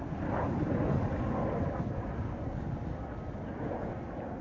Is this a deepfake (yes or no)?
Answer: no